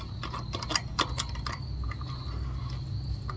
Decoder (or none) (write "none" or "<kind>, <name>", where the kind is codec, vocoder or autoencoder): none